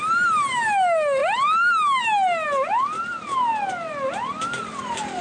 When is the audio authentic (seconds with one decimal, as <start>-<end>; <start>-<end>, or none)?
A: 0.0-5.2